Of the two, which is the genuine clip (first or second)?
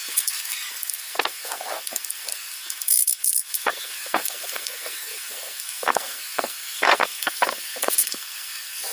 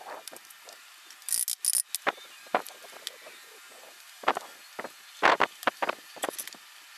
second